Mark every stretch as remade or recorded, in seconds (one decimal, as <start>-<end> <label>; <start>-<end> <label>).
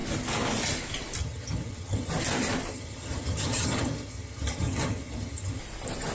0.0-1.2 recorded; 1.2-2.1 remade; 2.1-2.7 recorded; 2.7-5.6 remade; 5.6-6.1 recorded